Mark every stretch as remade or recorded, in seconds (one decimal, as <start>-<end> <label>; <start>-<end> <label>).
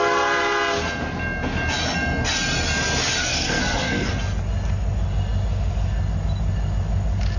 0.0-3.2 recorded; 3.2-4.1 remade; 4.1-7.4 recorded